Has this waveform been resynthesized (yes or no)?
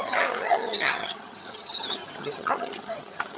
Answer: yes